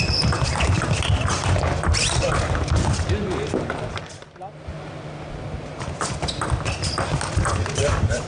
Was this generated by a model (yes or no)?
no